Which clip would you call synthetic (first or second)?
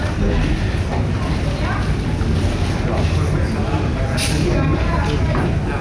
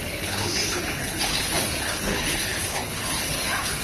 second